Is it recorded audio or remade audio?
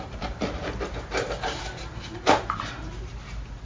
remade